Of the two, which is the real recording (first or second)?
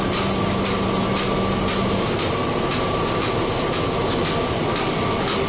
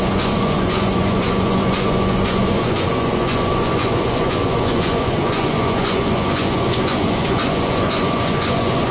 first